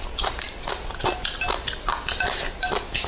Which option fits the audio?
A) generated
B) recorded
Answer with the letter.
B